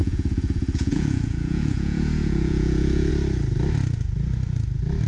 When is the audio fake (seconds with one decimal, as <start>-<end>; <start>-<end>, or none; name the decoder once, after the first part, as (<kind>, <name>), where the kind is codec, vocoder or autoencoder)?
0.0-3.1 (vocoder, Vocos)

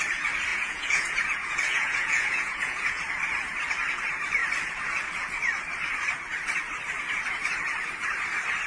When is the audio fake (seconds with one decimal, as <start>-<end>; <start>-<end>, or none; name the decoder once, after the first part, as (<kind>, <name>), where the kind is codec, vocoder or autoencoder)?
0.5-3.0 (vocoder, Vocos)

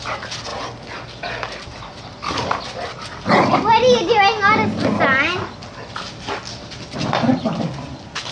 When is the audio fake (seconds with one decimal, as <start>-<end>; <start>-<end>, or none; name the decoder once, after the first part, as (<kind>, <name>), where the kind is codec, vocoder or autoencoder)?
none